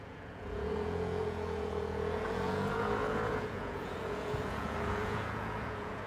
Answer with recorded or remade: remade